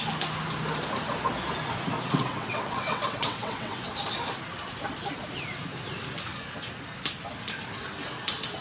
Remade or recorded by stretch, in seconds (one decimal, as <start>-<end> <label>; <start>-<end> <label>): 0.0-2.3 recorded; 2.3-3.9 remade; 3.9-8.6 recorded

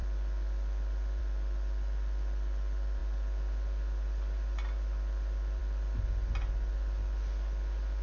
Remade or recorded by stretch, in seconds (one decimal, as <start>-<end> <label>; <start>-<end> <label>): 0.0-8.0 recorded

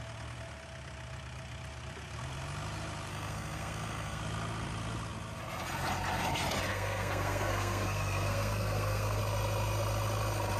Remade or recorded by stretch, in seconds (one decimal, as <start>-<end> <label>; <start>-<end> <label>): 0.0-3.1 recorded; 3.1-4.2 remade; 4.2-6.7 recorded; 6.7-9.2 remade; 9.2-10.6 recorded

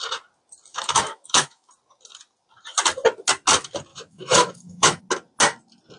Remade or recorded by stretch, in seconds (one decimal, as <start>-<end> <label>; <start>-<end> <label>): 0.0-0.7 recorded; 0.7-1.7 remade; 1.7-3.9 recorded; 3.9-5.0 remade; 5.0-6.0 recorded

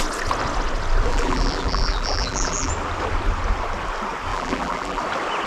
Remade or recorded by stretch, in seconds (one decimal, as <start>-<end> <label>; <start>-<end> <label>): 0.0-1.1 recorded; 1.1-2.7 remade; 2.7-4.3 recorded; 4.3-5.0 remade; 5.0-5.5 recorded

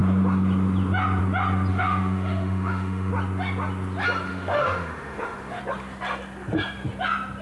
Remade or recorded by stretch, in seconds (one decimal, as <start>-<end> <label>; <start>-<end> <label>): 0.0-1.7 recorded; 1.7-3.1 remade; 3.1-4.3 recorded; 4.3-5.6 remade; 5.6-7.4 recorded

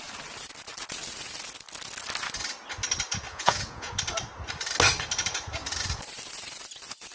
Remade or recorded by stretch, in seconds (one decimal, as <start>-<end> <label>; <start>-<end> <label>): 0.0-3.3 recorded; 3.3-3.9 remade; 3.9-7.1 recorded